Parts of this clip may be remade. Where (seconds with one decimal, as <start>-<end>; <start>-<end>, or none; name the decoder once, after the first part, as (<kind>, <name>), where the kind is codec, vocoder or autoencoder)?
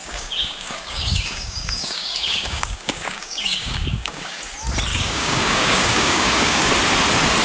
0.0-4.4 (codec, DAC); 4.9-6.7